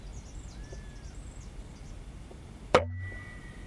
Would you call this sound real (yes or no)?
yes